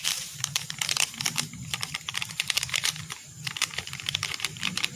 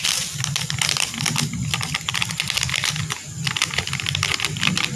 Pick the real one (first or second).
second